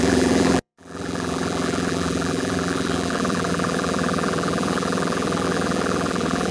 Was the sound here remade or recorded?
remade